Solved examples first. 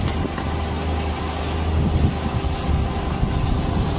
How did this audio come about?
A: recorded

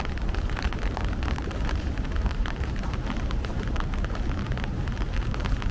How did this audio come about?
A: remade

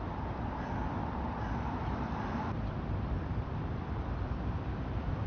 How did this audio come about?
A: remade